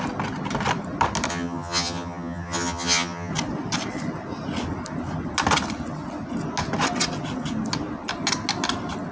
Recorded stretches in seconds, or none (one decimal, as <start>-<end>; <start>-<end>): 0.0-1.3; 3.3-9.1